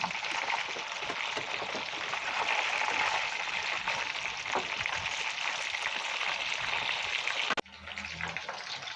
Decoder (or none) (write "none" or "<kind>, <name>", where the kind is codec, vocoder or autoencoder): none